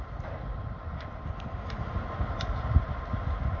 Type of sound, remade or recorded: recorded